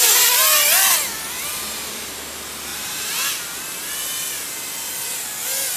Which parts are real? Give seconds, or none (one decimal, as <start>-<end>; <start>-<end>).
0.0-1.5; 2.2-2.7; 3.3-5.8